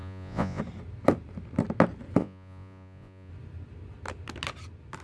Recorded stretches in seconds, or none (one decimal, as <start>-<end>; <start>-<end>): 0.6-2.2; 3.3-5.0